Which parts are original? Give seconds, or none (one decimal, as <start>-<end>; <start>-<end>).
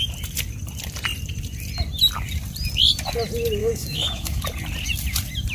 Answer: 0.0-3.6; 4.4-5.5